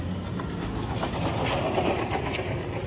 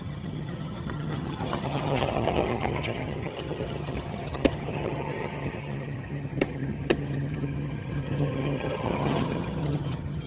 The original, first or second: first